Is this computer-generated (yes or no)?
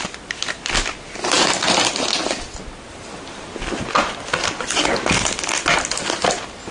no